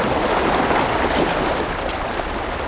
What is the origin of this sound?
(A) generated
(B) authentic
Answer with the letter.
B